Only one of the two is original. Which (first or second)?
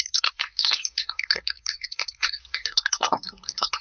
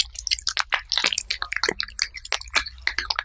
second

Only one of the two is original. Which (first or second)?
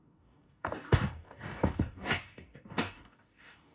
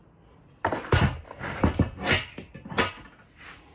second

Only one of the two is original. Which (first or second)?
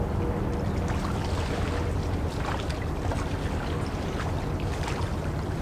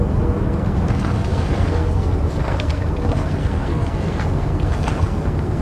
first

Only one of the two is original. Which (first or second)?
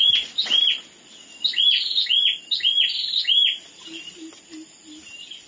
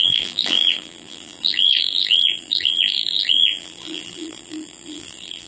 first